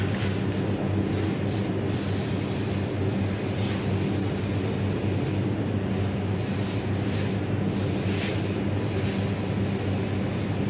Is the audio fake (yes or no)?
no